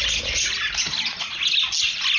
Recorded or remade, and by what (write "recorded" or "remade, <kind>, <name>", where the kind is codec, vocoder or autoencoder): recorded